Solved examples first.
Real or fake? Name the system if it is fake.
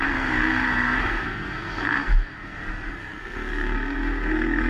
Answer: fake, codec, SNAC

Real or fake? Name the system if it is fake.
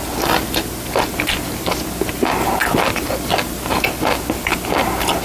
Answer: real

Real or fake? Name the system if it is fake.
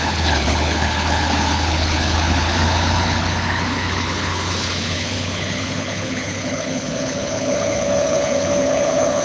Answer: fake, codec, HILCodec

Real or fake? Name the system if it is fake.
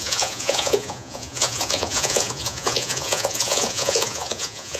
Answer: fake, vocoder, Vocos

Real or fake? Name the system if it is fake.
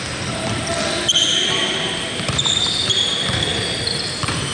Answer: fake, vocoder, BigVGAN v2